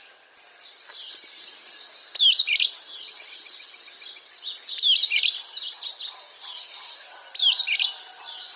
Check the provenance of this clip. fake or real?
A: real